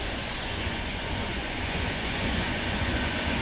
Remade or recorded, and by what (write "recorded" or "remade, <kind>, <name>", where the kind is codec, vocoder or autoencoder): remade, vocoder, Vocos